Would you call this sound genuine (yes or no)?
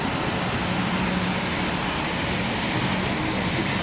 yes